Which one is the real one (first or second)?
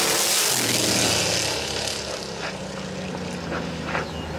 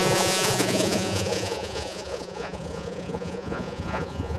first